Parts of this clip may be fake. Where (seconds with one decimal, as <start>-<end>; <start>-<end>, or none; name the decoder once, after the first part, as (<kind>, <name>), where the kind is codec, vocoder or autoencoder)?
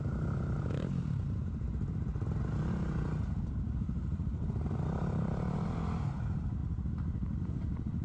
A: 0.0-2.1 (vocoder, BigVGAN v2); 2.7-6.6; 7.4-8.0